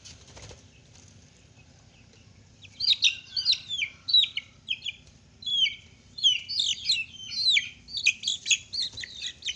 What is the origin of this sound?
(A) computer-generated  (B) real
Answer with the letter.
B